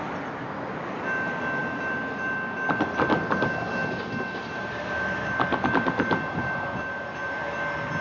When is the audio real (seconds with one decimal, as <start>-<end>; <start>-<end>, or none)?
0.0-8.0